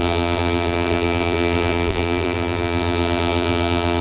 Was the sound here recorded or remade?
remade